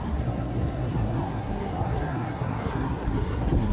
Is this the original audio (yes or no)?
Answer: no